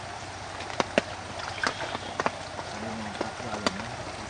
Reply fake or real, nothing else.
real